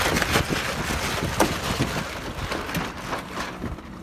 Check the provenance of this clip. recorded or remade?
recorded